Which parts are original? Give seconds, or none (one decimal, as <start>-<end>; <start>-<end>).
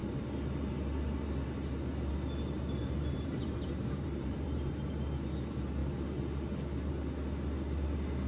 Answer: 0.0-2.8; 4.7-8.3